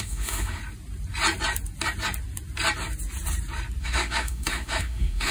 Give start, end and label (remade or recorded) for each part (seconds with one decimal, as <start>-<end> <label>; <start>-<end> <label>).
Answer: 0.0-0.6 remade; 0.6-3.8 recorded; 3.8-5.3 remade